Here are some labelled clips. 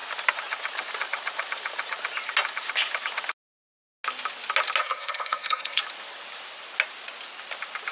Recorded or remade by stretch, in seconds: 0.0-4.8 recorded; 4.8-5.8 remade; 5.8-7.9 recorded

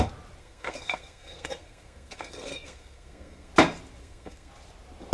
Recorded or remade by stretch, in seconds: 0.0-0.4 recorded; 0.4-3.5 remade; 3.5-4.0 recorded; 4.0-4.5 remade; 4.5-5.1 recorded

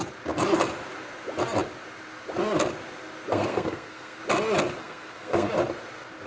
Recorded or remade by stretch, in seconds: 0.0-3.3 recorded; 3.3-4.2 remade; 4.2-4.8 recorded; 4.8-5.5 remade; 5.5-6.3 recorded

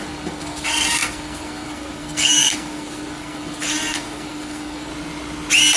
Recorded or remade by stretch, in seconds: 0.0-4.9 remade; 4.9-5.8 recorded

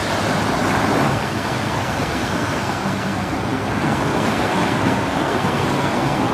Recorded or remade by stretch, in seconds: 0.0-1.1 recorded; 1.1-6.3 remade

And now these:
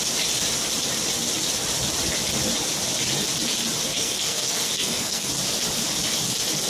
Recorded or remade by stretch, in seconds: 0.0-3.9 recorded; 3.9-5.3 remade; 5.3-6.7 recorded

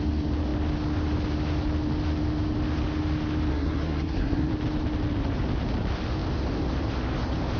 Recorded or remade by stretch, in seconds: 0.0-3.5 recorded; 3.5-4.5 remade; 4.5-7.6 recorded

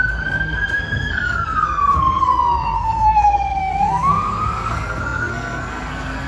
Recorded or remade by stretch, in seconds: 0.0-6.3 remade